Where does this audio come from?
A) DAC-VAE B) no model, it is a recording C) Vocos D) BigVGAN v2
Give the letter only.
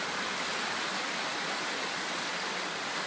B